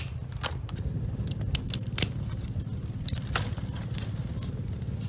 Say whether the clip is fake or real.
real